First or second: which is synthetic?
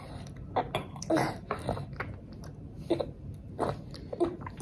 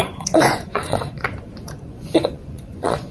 second